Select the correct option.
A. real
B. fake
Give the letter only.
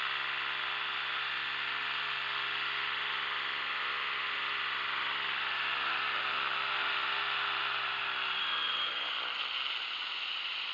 A